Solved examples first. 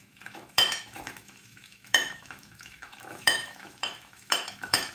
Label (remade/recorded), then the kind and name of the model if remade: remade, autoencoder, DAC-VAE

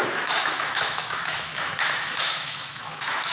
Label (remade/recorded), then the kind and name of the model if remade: remade, autoencoder, DAC-VAE